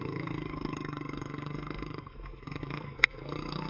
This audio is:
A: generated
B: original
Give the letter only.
A